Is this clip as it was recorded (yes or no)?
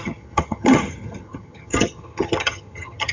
no